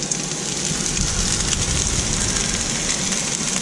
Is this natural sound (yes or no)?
yes